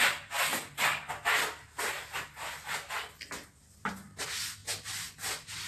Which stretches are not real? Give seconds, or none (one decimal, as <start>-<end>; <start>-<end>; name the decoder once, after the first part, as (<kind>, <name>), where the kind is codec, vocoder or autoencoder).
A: none